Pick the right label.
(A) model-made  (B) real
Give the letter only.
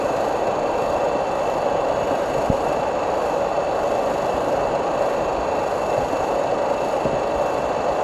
B